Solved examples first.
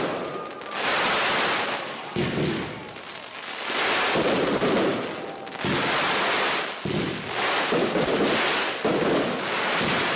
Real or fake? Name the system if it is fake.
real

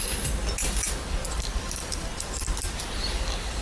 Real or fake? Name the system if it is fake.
real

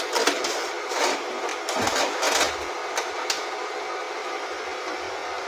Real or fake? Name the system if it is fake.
real